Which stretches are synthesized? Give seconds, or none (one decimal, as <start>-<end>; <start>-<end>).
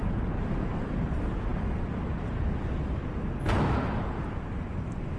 none